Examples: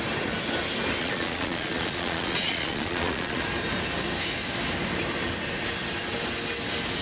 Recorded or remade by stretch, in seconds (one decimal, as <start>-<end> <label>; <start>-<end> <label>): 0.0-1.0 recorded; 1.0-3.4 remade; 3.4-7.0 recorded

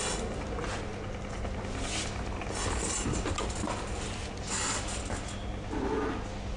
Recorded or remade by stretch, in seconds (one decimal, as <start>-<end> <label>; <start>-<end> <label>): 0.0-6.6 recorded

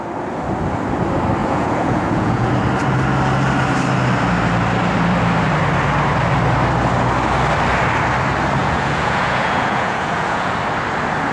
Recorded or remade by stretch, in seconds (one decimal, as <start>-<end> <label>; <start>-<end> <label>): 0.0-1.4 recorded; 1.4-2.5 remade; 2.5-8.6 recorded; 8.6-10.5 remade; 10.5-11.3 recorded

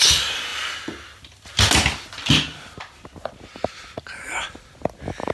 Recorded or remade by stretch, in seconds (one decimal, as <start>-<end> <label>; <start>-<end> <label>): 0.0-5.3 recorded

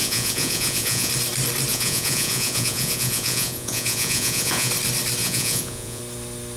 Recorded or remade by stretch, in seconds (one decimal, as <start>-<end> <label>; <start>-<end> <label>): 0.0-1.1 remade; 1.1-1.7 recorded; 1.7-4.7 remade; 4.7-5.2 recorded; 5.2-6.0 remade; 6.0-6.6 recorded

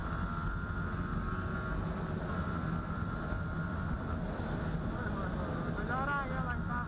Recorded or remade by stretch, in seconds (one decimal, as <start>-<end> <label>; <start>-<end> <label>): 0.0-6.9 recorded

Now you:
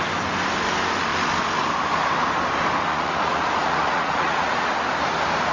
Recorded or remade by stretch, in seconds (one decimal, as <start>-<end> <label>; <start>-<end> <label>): 0.0-2.9 recorded; 2.9-4.6 remade; 4.6-5.5 recorded